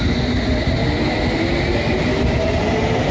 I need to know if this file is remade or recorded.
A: recorded